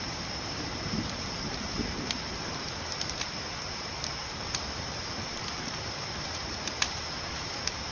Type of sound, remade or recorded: remade